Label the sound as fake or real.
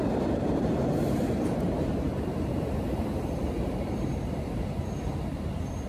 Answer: fake